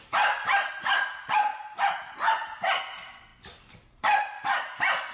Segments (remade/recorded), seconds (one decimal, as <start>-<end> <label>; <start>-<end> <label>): 0.0-5.1 recorded